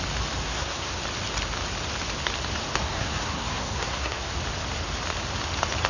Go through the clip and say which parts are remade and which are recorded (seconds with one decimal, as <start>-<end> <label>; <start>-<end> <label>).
0.0-0.4 recorded; 0.4-1.0 remade; 1.0-2.8 recorded; 2.8-4.3 remade; 4.3-5.9 recorded